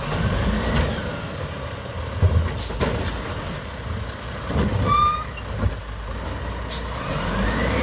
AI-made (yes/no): no